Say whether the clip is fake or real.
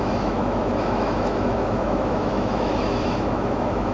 fake